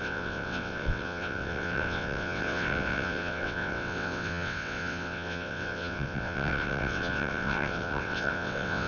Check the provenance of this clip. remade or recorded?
remade